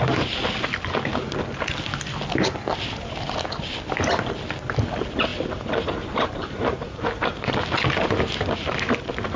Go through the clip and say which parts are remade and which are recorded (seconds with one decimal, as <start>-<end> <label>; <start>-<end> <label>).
0.0-5.3 recorded; 5.3-7.6 remade; 7.6-9.4 recorded